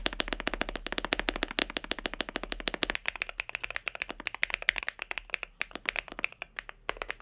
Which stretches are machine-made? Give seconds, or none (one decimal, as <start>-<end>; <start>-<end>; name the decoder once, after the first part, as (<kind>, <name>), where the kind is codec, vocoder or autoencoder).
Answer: none

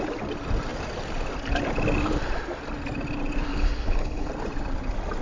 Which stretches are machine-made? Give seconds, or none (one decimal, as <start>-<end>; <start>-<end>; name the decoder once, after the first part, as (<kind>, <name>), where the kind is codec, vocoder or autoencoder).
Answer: 3.5-4.3 (codec, HILCodec)

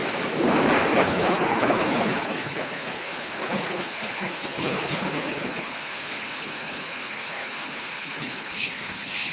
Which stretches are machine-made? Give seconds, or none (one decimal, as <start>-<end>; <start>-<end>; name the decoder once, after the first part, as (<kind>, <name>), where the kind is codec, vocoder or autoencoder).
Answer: 0.9-9.3 (codec, HILCodec)

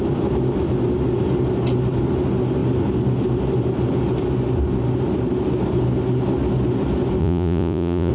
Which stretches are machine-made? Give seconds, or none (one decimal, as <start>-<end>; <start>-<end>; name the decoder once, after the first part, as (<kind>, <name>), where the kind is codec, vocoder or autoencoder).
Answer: 7.2-8.1 (vocoder, Vocos)

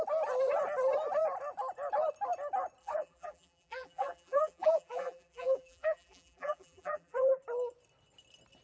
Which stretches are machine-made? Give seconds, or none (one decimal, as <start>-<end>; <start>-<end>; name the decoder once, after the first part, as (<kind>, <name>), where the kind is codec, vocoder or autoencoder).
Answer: 2.8-7.4 (vocoder, BigVGAN v2)

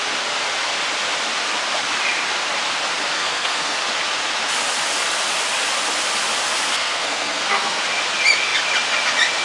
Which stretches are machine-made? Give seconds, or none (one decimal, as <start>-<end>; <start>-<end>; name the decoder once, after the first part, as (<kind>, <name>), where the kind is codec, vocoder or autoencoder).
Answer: 3.1-3.8 (codec, SNAC); 6.7-7.8